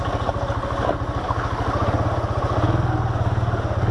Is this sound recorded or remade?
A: recorded